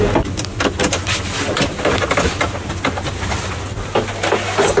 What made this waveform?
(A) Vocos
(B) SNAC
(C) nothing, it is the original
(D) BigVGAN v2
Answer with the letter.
C